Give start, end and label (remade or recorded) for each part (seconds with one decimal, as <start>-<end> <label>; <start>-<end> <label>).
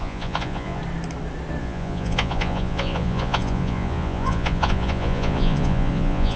0.0-0.8 remade; 0.8-1.6 recorded; 1.6-6.4 remade